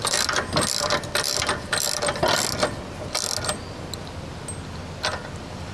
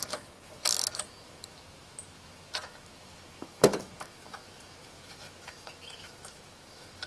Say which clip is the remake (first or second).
second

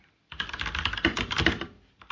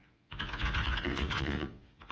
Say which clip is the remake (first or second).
second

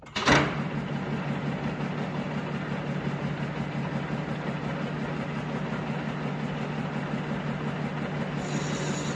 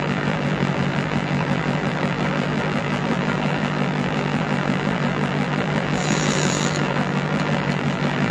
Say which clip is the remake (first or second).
second